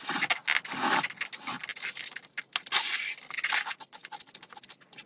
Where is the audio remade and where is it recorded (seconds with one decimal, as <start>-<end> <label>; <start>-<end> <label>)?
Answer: 0.0-5.1 recorded